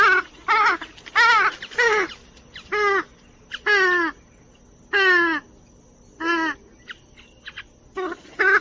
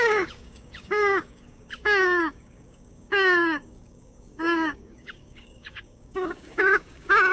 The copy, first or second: second